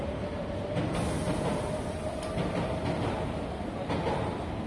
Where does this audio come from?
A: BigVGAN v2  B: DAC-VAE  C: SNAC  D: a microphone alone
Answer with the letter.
D